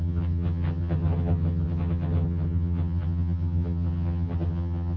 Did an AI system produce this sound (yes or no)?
yes